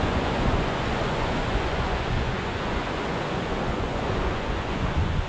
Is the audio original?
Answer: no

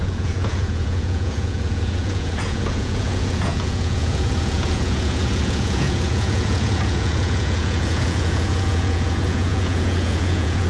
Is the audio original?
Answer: no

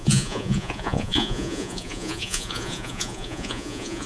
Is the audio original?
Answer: no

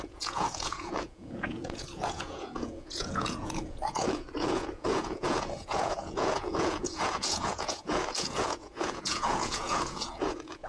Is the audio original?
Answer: no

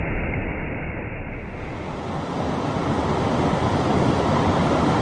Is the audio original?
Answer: yes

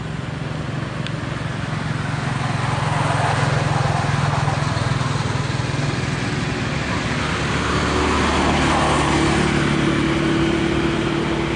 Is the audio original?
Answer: yes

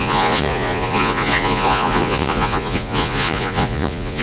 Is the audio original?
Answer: no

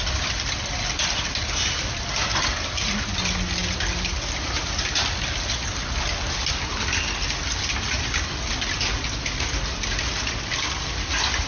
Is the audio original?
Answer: yes